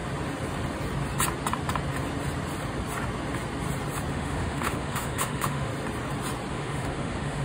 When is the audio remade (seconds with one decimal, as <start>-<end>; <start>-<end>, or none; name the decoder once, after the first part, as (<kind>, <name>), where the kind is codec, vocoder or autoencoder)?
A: 4.1-5.7 (autoencoder, DAC-VAE); 6.5-7.4